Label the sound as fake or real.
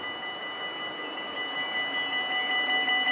real